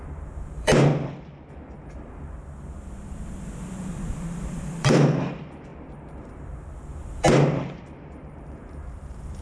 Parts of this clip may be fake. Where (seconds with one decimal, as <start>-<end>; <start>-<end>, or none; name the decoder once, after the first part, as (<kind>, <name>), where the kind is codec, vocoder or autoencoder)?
0.0-0.9 (vocoder, BigVGAN v2); 1.5-9.4